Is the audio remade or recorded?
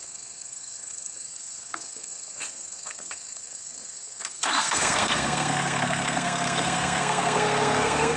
remade